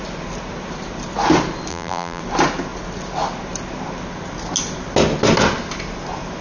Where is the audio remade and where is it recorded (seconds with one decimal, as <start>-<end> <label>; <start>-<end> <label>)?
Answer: 0.0-1.7 recorded; 1.7-2.2 remade; 2.2-6.4 recorded